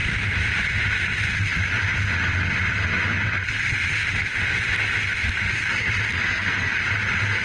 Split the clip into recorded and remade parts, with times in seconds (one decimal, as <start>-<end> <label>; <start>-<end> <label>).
0.0-6.1 recorded; 6.1-6.8 remade; 6.8-7.4 recorded